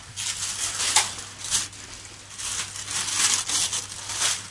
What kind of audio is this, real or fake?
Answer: real